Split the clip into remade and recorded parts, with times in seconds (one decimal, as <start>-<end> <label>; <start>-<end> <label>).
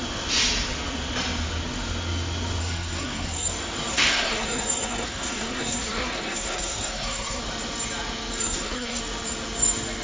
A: 0.0-2.6 recorded; 2.6-3.5 remade; 3.5-3.9 recorded; 3.9-7.4 remade; 7.4-8.4 recorded; 8.4-9.0 remade; 9.0-10.0 recorded